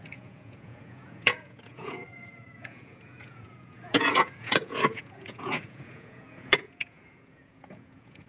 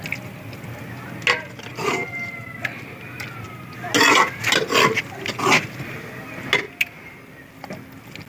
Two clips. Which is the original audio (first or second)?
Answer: second